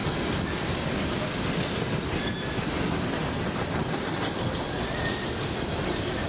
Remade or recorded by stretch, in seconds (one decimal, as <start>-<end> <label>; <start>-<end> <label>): 0.0-6.3 recorded